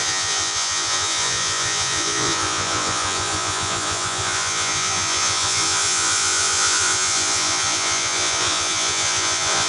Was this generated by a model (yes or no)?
yes